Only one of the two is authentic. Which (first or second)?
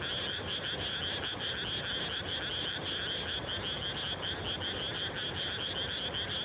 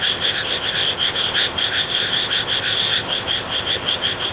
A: first